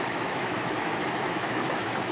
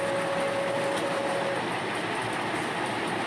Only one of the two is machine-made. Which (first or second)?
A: first